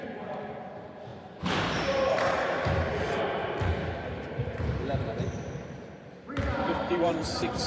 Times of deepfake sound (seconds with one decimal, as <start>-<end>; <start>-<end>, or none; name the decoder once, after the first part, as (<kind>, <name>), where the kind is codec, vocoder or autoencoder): 0.0-4.4 (vocoder, BigVGAN v2); 5.0-7.7